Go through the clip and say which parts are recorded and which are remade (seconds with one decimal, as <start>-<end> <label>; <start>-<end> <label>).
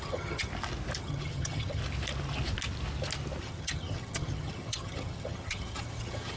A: 0.0-0.5 remade; 0.5-1.0 recorded; 1.0-1.8 remade; 1.8-3.4 recorded; 3.4-6.4 remade